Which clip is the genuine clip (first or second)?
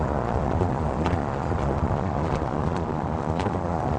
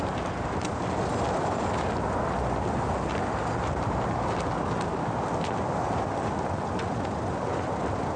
second